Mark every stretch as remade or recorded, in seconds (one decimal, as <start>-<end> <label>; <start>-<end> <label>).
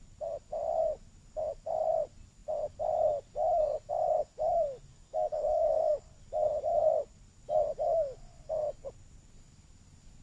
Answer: 0.0-4.9 recorded; 4.9-6.2 remade; 6.2-10.2 recorded